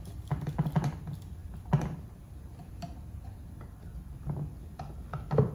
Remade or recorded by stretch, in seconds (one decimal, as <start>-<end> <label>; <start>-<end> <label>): 0.0-1.4 recorded; 1.4-4.3 remade; 4.3-5.5 recorded

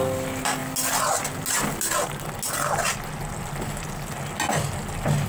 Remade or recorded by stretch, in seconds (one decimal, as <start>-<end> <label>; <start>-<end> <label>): 0.0-5.3 recorded

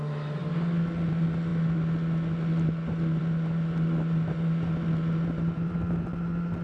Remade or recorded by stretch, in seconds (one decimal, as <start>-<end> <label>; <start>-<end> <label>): 0.0-6.6 recorded

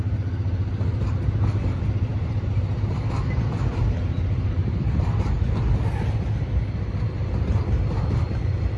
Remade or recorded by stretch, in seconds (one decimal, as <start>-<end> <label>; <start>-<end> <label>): 0.0-2.1 recorded; 2.1-3.1 remade; 3.1-8.8 recorded

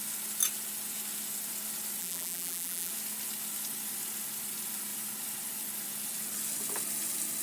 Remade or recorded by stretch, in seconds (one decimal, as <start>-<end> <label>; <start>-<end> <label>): 0.0-2.0 recorded; 2.0-2.9 remade; 2.9-7.4 recorded